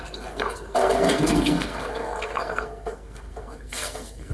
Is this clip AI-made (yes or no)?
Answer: yes